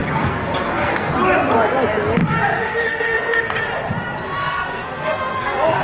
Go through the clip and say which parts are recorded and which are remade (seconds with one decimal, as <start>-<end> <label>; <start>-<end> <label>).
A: 0.0-1.1 remade; 1.1-2.2 recorded; 2.2-3.6 remade; 3.6-4.4 recorded; 4.4-5.8 remade